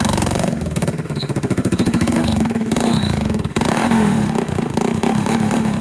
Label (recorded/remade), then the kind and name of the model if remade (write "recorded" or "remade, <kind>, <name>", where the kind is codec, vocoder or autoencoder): remade, autoencoder, DAC-VAE